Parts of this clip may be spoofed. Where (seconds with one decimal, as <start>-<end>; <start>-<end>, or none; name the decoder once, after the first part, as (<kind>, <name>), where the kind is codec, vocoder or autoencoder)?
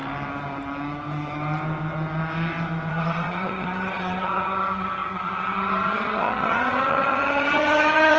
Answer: 2.9-8.2 (vocoder, HiFi-GAN)